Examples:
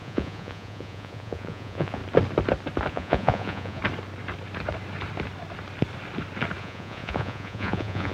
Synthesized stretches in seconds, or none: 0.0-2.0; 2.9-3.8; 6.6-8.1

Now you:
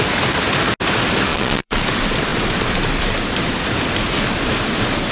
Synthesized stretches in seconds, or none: 1.3-1.8